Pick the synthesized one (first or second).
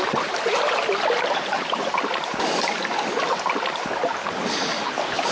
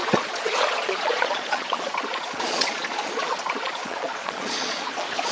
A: second